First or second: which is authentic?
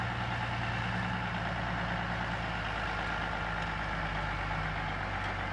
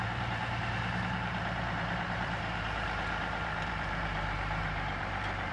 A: first